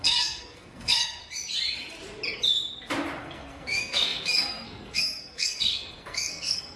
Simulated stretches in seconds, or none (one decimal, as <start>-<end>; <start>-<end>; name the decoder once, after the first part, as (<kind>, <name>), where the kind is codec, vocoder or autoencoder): 0.0-1.2 (codec, SNAC); 3.2-6.8